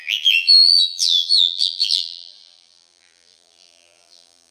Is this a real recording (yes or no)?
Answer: no